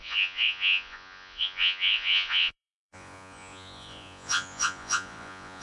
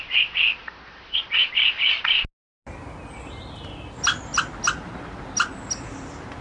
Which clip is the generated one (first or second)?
first